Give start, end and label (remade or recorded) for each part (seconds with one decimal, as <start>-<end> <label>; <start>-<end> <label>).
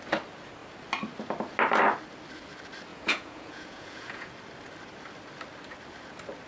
0.0-2.9 recorded; 2.9-4.3 remade; 4.3-6.5 recorded